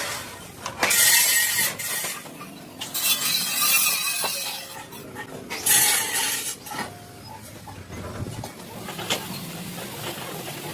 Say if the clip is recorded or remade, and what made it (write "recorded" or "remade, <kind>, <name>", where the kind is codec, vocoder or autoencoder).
recorded